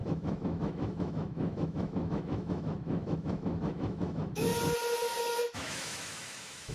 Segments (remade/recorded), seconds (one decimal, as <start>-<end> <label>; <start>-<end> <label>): 0.0-4.5 remade; 4.5-5.2 recorded; 5.2-6.7 remade

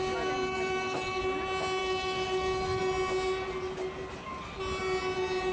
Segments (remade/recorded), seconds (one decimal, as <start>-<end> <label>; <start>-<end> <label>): 0.0-0.5 recorded; 0.5-1.2 remade; 1.2-1.8 recorded; 1.8-2.8 remade; 2.8-5.5 recorded